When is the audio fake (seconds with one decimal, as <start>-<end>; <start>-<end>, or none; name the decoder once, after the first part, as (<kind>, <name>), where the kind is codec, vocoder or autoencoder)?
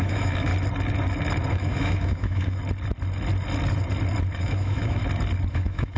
0.0-0.5 (autoencoder, DAC-VAE); 1.5-2.6; 4.4-5.0; 5.5-6.0